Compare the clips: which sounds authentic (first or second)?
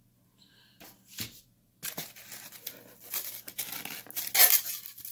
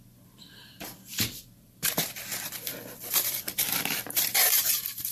first